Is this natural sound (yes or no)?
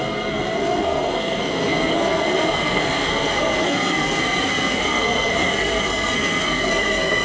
no